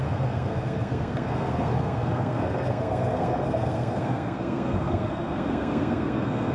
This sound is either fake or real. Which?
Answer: fake